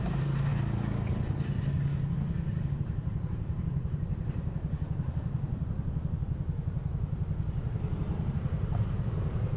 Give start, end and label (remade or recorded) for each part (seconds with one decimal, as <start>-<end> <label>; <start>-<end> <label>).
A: 0.0-0.5 remade; 0.5-2.7 recorded; 2.7-5.6 remade; 5.6-8.5 recorded; 8.5-9.6 remade